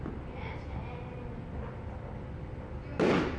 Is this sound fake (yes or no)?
no